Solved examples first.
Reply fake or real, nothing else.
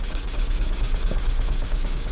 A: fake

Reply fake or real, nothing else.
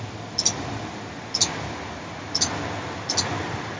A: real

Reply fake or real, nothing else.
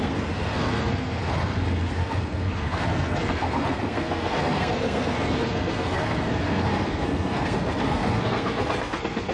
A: fake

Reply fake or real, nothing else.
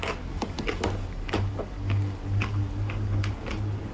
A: fake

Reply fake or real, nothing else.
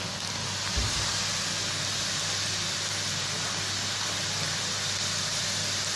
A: real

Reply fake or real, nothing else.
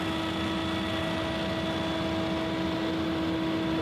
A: real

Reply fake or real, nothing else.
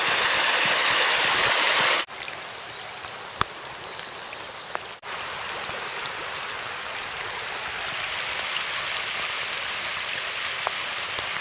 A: real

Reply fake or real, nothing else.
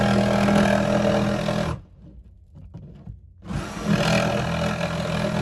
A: real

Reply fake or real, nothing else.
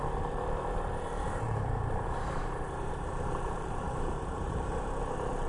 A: fake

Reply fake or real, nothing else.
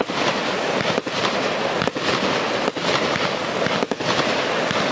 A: real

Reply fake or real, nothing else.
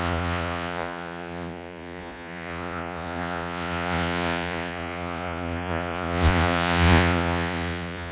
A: fake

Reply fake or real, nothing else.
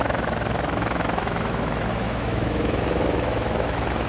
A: fake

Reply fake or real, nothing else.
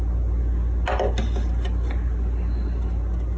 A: real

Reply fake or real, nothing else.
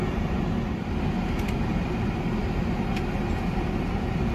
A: real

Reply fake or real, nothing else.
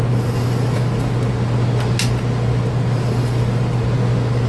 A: real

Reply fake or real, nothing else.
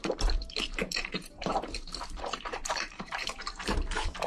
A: fake